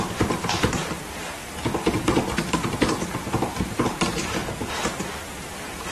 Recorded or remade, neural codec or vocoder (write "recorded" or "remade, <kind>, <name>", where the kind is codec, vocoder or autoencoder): remade, vocoder, BigVGAN v2